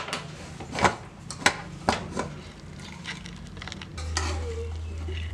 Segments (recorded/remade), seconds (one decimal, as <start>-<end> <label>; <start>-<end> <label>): 0.0-5.3 recorded